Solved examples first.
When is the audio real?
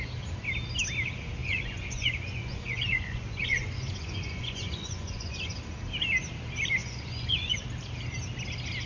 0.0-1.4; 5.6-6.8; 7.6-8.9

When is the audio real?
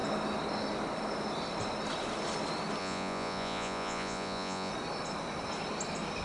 0.0-2.8; 4.7-6.2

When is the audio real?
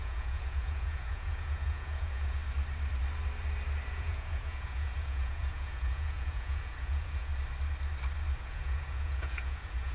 2.4-3.9; 7.3-8.4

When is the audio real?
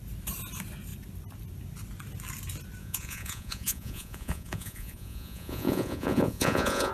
0.0-2.8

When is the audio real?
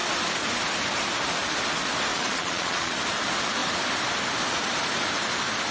0.0-2.1; 2.9-5.7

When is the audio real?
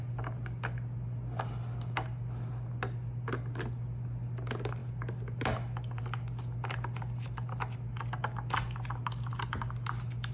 0.0-10.3